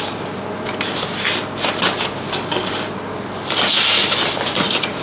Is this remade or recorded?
recorded